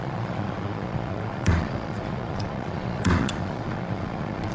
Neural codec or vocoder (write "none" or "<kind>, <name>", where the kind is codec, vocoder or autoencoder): vocoder, Vocos